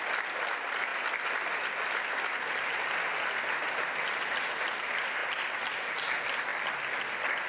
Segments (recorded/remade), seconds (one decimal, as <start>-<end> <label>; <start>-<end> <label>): 0.0-7.5 recorded